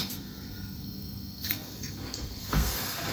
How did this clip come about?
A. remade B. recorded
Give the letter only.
A